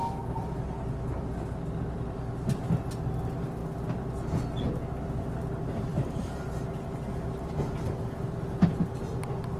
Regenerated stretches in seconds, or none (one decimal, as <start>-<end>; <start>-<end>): 0.0-2.6; 5.9-6.5